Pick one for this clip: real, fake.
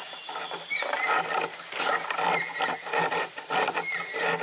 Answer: real